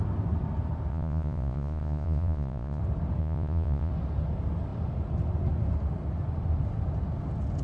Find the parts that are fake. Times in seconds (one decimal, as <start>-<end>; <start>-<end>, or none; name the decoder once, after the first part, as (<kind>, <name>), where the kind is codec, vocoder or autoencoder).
0.9-2.8 (vocoder, Vocos); 3.2-3.9